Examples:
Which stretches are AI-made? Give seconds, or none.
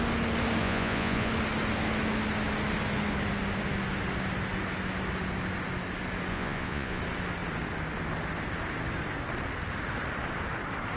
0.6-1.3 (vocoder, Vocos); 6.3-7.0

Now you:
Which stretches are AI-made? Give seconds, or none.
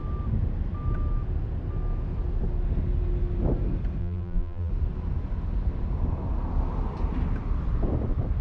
4.0-4.7 (vocoder, BigVGAN v2)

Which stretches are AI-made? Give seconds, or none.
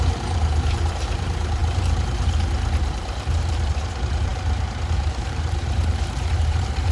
0.0-6.9 (vocoder, BigVGAN v2)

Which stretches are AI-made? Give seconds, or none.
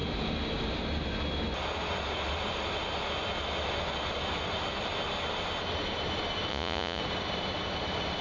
6.5-7.0 (vocoder, Vocos)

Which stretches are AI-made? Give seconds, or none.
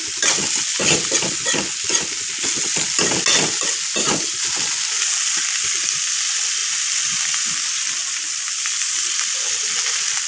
8.0-9.6 (vocoder, BigVGAN v2)